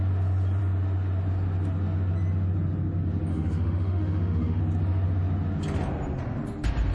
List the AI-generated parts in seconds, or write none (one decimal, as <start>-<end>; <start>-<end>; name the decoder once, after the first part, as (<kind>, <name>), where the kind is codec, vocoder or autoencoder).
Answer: 3.3-4.6 (autoencoder, DAC-VAE)